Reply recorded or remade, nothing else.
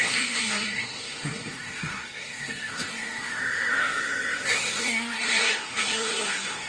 remade